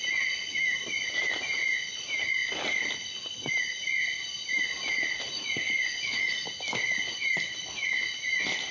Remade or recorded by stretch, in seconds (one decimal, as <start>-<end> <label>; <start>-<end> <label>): 0.0-8.7 recorded